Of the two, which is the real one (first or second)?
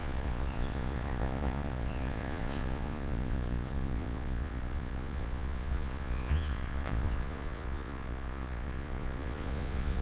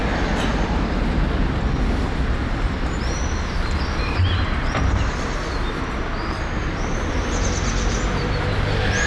second